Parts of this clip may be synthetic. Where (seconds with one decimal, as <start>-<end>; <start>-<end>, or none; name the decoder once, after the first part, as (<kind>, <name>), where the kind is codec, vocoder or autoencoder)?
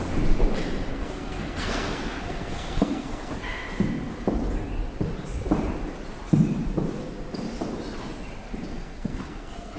0.9-3.3 (codec, SNAC); 8.7-9.8